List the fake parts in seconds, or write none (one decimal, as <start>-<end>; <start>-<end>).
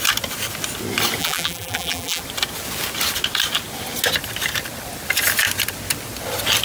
1.2-2.2